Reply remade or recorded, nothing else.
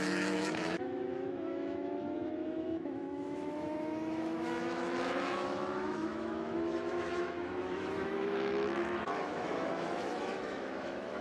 remade